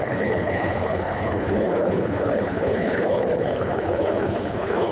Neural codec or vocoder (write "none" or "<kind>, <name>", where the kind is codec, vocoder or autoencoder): codec, HILCodec